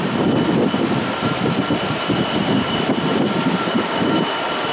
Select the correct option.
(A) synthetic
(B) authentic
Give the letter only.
A